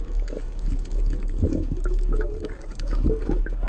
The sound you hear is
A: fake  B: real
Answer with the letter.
A